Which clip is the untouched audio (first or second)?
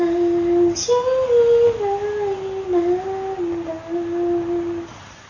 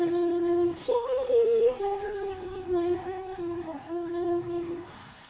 first